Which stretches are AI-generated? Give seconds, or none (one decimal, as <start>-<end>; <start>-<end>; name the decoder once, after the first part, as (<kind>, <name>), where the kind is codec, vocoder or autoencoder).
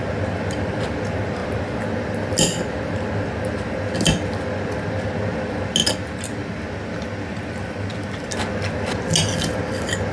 none